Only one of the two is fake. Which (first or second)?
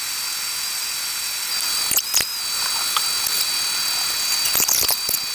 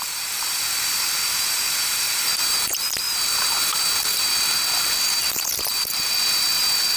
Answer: second